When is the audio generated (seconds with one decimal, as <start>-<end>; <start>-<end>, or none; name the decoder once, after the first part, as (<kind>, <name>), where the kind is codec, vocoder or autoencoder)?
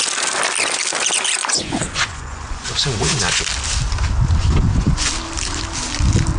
1.4-3.4 (vocoder, Vocos); 4.4-5.1